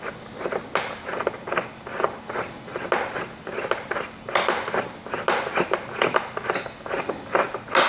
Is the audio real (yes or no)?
yes